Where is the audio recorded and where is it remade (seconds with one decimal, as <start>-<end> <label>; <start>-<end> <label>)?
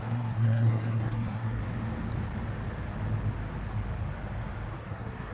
0.0-1.6 remade; 1.6-4.8 recorded; 4.8-5.3 remade